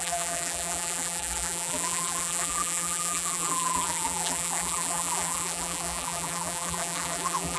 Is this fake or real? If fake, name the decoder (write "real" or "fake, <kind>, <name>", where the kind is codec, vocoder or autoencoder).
fake, vocoder, BigVGAN v2